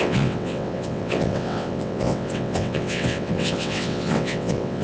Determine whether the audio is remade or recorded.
remade